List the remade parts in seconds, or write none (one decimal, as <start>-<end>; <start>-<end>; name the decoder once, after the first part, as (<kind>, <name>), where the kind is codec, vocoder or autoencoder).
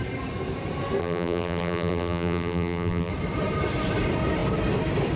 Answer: 1.0-3.1 (vocoder, BigVGAN v2)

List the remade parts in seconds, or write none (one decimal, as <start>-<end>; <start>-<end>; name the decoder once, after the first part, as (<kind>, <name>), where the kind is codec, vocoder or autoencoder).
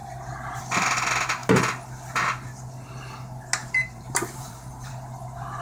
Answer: 3.6-4.9 (vocoder, BigVGAN v2)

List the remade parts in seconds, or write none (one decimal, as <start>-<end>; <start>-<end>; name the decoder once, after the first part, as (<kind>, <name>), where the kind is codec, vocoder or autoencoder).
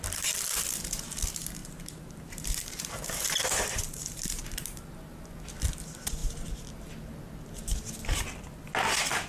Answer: 1.6-4.4 (vocoder, BigVGAN v2)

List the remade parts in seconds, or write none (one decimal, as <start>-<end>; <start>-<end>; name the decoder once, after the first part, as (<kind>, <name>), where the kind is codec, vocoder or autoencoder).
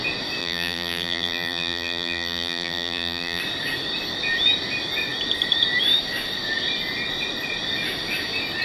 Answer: 0.4-3.4 (vocoder, BigVGAN v2)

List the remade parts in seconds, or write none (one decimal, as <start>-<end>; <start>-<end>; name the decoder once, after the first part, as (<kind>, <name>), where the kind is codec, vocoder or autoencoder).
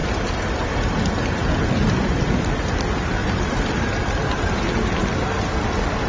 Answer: 0.0-2.3 (vocoder, BigVGAN v2); 3.2-4.6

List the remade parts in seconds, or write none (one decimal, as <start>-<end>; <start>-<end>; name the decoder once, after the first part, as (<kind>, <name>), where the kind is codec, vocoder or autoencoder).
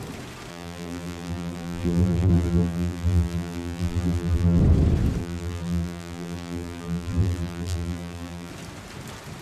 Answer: 0.5-4.6 (vocoder, BigVGAN v2); 5.2-8.5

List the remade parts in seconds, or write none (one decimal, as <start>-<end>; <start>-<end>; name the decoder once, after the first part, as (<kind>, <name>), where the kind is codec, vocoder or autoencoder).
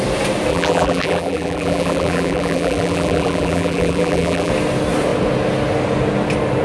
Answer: 0.5-4.5 (vocoder, BigVGAN v2)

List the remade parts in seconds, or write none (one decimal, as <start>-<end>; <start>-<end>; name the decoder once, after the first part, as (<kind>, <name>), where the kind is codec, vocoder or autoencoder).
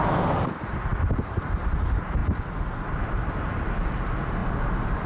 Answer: none